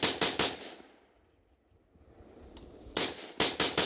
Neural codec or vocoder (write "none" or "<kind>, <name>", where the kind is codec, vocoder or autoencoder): none